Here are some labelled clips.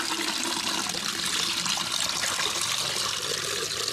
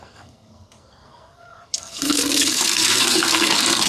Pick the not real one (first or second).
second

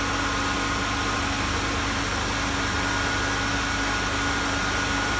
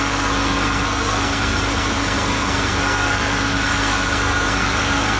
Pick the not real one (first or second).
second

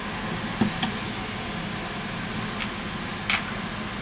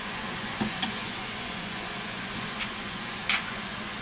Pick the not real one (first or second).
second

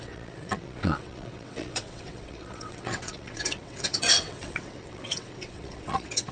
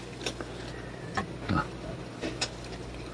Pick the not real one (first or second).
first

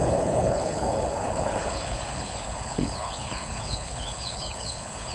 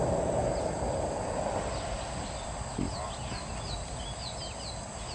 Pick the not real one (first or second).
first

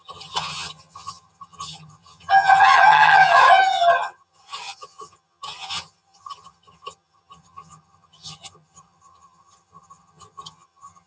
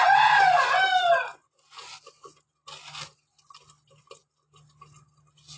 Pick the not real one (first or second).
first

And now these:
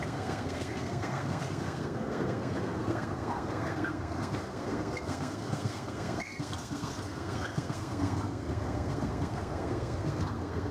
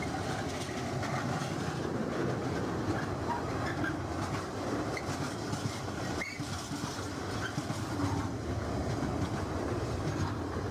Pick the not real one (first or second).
first